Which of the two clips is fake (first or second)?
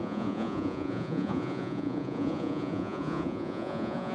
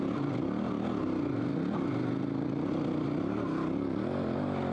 first